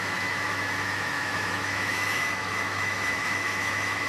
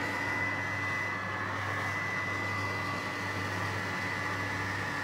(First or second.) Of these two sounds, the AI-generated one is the first